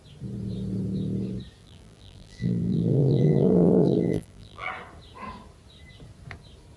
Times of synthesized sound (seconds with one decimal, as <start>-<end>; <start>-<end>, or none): 1.6-4.7